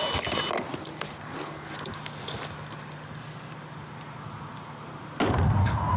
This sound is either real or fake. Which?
real